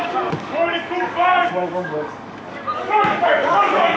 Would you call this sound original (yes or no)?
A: no